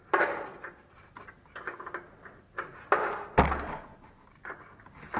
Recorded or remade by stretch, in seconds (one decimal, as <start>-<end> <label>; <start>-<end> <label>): 0.0-5.2 recorded